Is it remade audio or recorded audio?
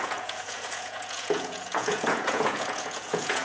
remade